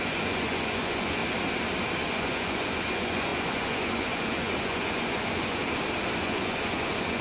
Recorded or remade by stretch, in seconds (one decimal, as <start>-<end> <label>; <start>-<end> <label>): 0.0-1.2 remade; 1.2-2.1 recorded; 2.1-5.6 remade; 5.6-6.2 recorded; 6.2-7.2 remade